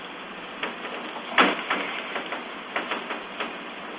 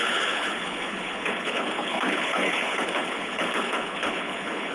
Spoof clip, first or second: second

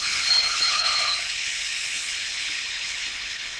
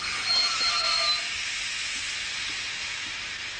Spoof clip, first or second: first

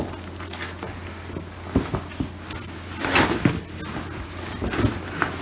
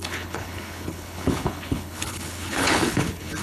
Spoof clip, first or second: second